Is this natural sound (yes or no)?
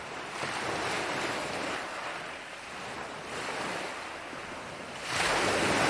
yes